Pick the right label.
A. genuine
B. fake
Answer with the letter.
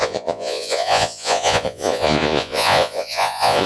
B